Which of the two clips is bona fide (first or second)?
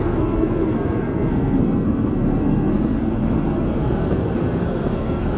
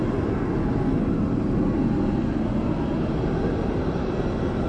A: second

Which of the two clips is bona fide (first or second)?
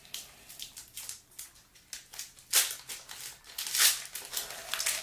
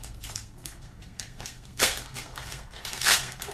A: first